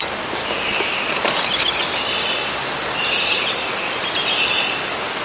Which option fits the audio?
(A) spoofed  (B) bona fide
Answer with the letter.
B